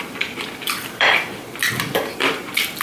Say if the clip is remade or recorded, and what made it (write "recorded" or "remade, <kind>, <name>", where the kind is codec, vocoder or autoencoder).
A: remade, vocoder, BigVGAN v2